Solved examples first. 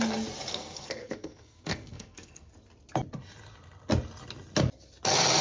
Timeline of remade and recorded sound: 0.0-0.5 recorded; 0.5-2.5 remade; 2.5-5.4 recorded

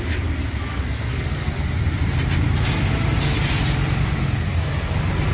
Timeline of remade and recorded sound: 0.0-0.7 recorded; 0.7-1.5 remade; 1.5-5.3 recorded

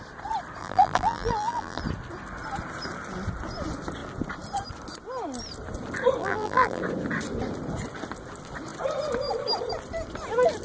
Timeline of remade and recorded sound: 0.0-0.6 recorded; 0.6-1.8 remade; 1.8-6.2 recorded; 6.2-6.8 remade; 6.8-10.6 recorded

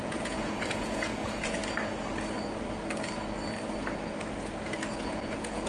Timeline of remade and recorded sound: 0.0-1.6 remade; 1.6-5.0 recorded; 5.0-5.7 remade

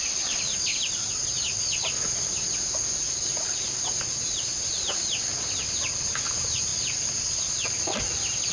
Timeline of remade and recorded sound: 0.0-3.2 recorded; 3.2-4.2 remade; 4.2-6.7 recorded; 6.7-7.3 remade; 7.3-8.5 recorded